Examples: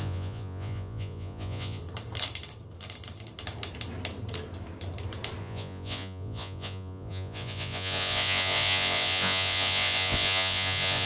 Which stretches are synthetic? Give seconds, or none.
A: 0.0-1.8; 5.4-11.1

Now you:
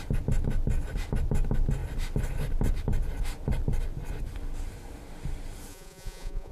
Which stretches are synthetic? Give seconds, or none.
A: 5.7-6.5

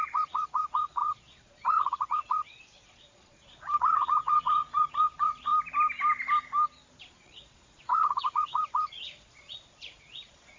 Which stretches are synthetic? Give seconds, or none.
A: 0.0-5.5; 7.0-10.6